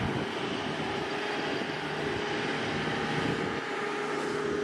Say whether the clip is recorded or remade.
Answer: recorded